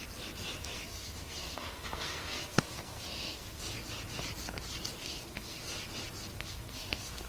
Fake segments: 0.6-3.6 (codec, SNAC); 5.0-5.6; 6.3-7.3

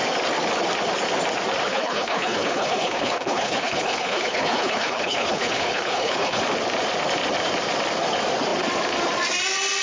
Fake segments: 1.7-6.4 (codec, HILCodec)

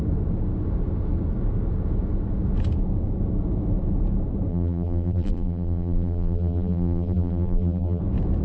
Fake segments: 4.5-8.0 (vocoder, BigVGAN v2)

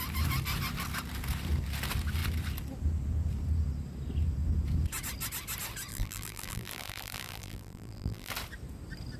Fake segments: 5.9-8.3 (vocoder, BigVGAN v2)

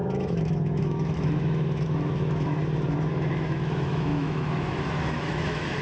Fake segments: 0.0-2.6 (autoencoder, DAC-VAE); 3.3-5.8

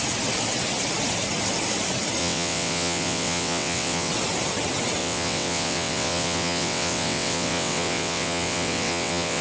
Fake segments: 2.2-4.1 (vocoder, WaveNeXt); 5.0-9.4

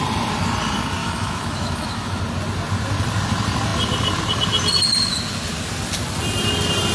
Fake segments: 1.0-2.2 (autoencoder, DAC-VAE)

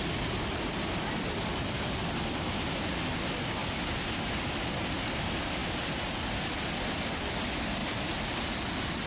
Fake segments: 7.8-8.3 (vocoder, BigVGAN v2)